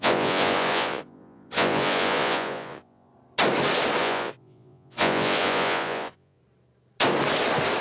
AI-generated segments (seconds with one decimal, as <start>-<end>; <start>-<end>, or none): 0.0-3.1; 4.0-6.4